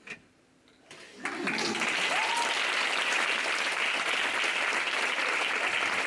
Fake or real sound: real